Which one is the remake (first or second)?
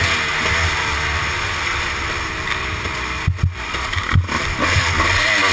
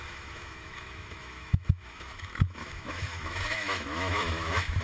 second